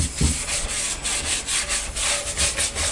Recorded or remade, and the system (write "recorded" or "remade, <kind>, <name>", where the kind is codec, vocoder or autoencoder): recorded